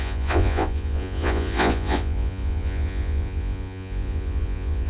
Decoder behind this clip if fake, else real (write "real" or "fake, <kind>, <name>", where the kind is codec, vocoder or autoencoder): fake, vocoder, Vocos